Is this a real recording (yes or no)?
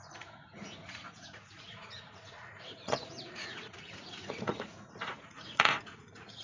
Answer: no